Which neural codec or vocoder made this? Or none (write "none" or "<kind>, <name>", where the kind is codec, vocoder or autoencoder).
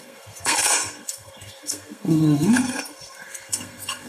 codec, SNAC